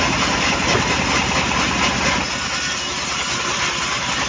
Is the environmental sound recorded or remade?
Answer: recorded